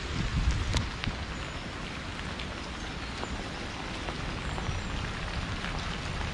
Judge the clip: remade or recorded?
recorded